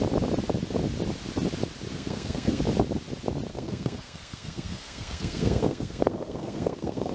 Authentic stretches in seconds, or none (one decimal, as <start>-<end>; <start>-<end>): 0.0-1.9; 2.6-3.5